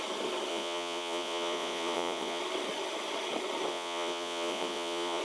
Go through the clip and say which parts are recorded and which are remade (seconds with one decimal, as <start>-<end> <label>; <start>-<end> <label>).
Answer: 0.0-0.5 recorded; 0.5-2.4 remade; 2.4-3.7 recorded; 3.7-5.2 remade